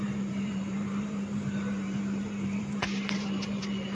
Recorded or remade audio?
remade